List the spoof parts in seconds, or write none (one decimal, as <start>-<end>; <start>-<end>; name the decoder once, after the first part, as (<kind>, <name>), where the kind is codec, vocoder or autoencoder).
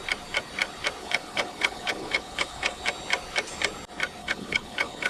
1.0-2.8 (codec, HILCodec); 4.2-5.1